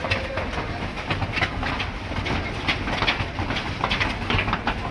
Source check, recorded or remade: recorded